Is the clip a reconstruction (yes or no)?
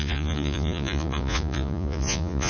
yes